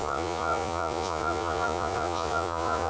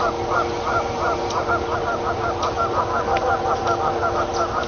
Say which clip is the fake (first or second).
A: first